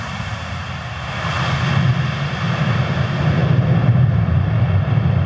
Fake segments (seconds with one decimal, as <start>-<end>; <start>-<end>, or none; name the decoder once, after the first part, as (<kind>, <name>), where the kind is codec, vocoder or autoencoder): 0.0-1.9 (vocoder, BigVGAN v2); 2.5-3.4; 4.2-5.3